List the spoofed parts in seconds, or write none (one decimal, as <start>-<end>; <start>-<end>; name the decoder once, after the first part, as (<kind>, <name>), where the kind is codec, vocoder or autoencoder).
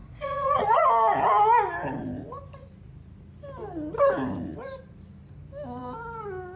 0.0-0.9 (vocoder, Vocos)